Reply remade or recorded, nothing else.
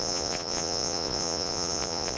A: remade